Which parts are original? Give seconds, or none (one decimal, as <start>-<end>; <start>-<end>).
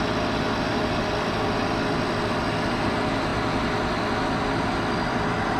0.0-0.7; 1.6-5.6